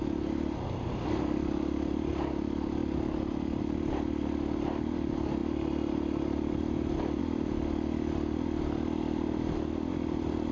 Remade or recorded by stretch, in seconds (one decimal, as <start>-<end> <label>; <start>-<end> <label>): 0.0-10.5 recorded